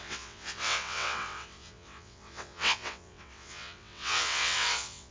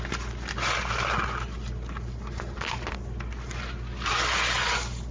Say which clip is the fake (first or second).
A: first